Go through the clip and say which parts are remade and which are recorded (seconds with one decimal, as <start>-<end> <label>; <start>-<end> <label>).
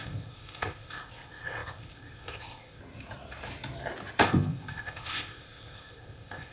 0.0-2.8 remade; 2.8-4.2 recorded; 4.2-6.5 remade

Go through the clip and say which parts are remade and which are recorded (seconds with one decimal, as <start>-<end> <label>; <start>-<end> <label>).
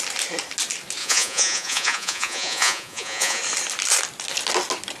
0.0-1.0 recorded; 1.0-3.4 remade; 3.4-5.0 recorded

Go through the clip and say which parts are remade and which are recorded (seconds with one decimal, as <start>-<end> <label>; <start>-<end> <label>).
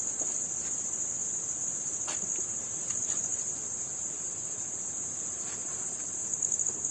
0.0-6.9 recorded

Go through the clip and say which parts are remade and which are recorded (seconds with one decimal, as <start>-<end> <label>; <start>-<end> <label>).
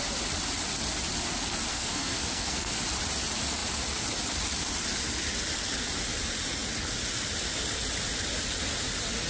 0.0-1.7 recorded; 1.7-2.8 remade; 2.8-9.3 recorded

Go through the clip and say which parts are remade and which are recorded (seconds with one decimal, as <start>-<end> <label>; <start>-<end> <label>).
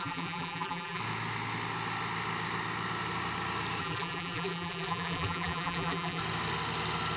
0.0-1.0 remade; 1.0-3.8 recorded; 3.8-6.2 remade; 6.2-7.2 recorded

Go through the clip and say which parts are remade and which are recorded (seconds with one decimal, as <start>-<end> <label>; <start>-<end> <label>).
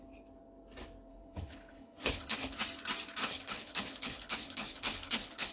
0.0-1.1 recorded; 1.1-2.6 remade; 2.6-3.2 recorded; 3.2-5.5 remade